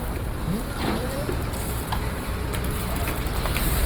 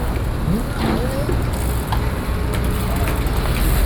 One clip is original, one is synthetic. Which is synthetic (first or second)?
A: first